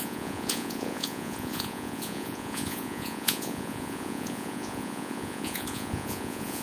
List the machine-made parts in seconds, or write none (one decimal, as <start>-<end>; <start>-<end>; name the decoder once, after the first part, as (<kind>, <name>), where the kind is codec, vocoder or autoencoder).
0.0-6.6 (vocoder, Vocos)